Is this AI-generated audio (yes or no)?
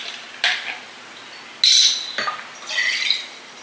no